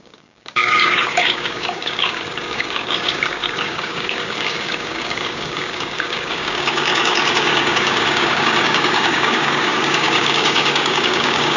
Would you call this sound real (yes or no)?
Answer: no